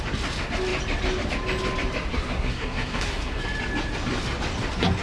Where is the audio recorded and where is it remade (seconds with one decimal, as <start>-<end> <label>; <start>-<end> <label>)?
0.0-2.1 recorded; 2.1-3.4 remade; 3.4-5.0 recorded